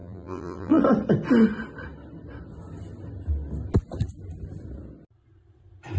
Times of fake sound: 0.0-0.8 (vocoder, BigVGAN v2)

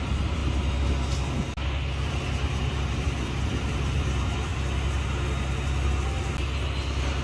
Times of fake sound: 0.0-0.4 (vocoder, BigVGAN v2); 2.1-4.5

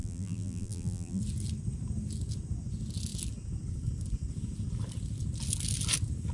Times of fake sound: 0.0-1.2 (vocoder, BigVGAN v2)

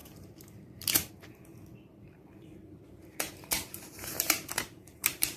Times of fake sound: 0.0-1.1 (vocoder, BigVGAN v2); 1.9-5.4

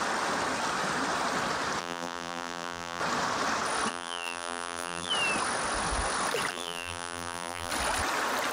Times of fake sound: 1.8-3.0 (vocoder, BigVGAN v2); 3.9-5.1; 6.5-7.7

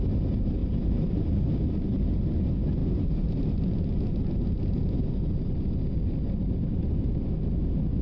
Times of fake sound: 0.6-1.4 (vocoder, BigVGAN v2)